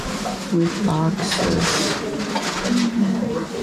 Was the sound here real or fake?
real